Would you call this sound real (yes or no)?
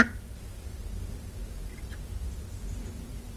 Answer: yes